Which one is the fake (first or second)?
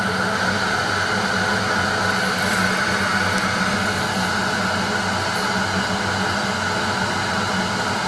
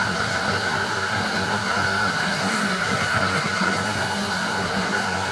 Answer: second